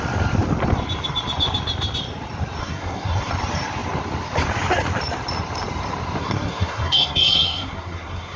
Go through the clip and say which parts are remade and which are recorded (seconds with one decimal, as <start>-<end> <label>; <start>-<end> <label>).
0.0-2.6 recorded; 2.6-3.3 remade; 3.3-6.2 recorded; 6.2-8.4 remade